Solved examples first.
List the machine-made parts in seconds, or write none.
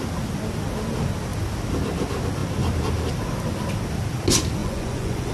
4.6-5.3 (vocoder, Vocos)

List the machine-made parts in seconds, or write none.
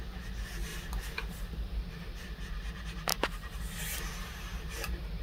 0.7-1.8 (vocoder, BigVGAN v2); 3.1-3.6; 4.2-5.2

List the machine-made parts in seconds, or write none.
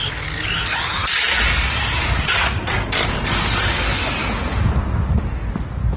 4.2-4.7 (vocoder, Vocos)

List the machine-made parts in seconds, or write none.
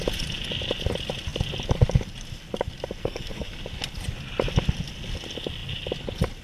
3.0-3.5 (codec, SNAC)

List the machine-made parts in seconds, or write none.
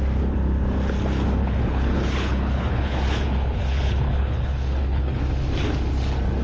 1.4-5.2 (codec, HILCodec)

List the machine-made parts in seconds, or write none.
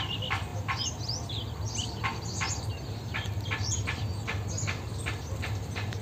none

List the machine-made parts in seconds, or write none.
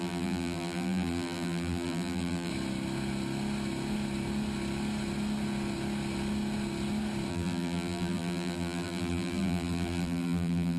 0.0-2.5 (vocoder, BigVGAN v2); 7.3-10.8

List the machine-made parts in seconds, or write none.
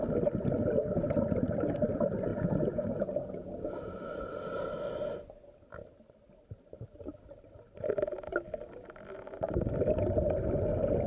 2.3-3.7 (vocoder, Vocos)